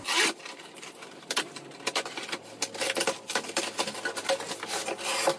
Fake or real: real